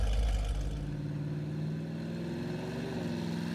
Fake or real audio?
real